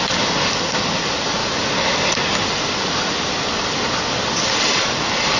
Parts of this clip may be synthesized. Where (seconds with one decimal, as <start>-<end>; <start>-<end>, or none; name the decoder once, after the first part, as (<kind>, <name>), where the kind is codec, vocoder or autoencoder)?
none

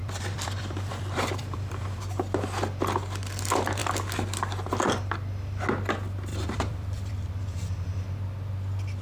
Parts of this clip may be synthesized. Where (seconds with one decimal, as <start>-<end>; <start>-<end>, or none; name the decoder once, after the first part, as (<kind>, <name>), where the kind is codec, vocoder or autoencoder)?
0.0-2.0 (vocoder, BigVGAN v2); 6.3-7.1

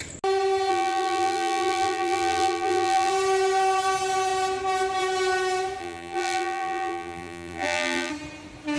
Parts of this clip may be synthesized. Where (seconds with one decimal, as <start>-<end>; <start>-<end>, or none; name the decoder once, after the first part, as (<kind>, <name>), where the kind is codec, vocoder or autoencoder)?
0.7-3.1 (vocoder, BigVGAN v2); 5.8-8.1

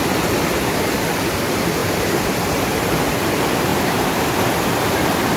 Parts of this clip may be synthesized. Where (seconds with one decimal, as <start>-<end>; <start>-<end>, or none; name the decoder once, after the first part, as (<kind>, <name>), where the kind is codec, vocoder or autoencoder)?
1.8-3.3 (vocoder, BigVGAN v2); 3.7-4.3